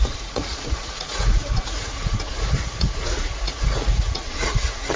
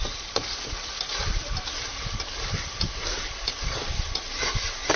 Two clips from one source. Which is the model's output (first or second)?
first